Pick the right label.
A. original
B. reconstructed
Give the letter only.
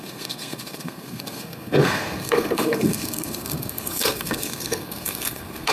B